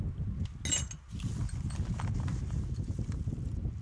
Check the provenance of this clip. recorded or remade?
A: recorded